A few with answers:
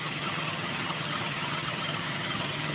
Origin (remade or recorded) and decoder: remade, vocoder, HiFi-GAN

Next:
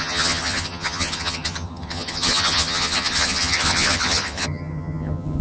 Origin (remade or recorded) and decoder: remade, vocoder, HiFi-GAN